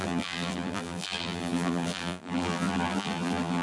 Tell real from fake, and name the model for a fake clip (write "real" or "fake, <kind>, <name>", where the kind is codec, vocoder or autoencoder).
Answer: fake, vocoder, BigVGAN v2